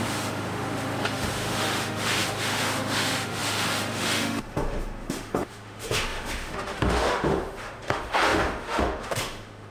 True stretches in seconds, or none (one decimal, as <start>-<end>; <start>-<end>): none